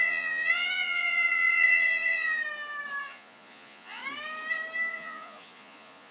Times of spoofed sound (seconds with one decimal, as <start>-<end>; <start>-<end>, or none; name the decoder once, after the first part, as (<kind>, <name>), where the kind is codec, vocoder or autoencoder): 0.0-2.4 (vocoder, Vocos); 3.0-4.0; 4.9-6.1